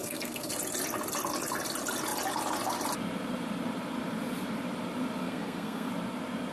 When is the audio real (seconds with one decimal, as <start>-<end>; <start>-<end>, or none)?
0.5-5.2; 5.9-6.5